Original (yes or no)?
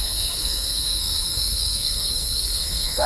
no